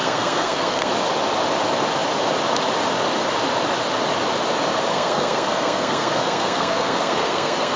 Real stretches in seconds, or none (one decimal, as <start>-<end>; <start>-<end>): 0.9-4.9